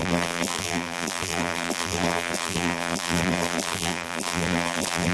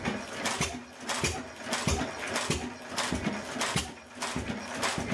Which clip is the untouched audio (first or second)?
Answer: second